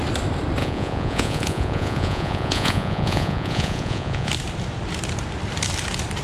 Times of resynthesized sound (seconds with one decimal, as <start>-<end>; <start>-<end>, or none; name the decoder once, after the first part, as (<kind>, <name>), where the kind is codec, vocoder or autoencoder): 0.6-4.3 (vocoder, Vocos)